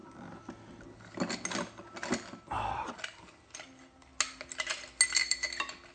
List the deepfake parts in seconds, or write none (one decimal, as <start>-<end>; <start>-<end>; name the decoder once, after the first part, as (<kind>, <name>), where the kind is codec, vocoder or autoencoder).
none